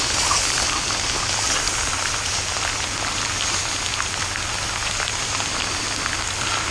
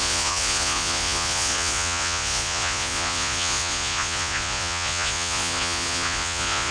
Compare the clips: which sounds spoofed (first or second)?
second